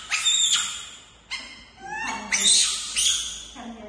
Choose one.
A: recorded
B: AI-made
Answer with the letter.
A